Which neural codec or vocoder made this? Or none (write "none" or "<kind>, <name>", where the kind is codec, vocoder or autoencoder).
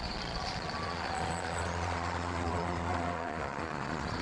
vocoder, Vocos